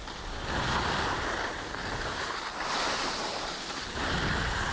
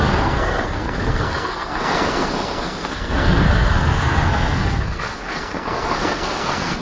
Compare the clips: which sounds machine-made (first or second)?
second